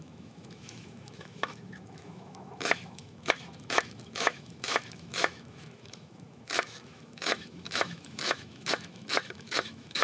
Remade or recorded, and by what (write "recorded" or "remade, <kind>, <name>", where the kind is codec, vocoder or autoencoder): remade, autoencoder, DAC-VAE